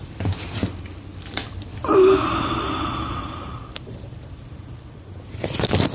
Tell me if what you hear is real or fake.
fake